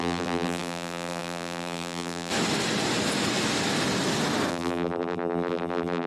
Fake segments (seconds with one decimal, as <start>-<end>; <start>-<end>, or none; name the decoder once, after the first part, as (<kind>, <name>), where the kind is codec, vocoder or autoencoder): 0.0-2.3 (vocoder, BigVGAN v2); 4.5-6.1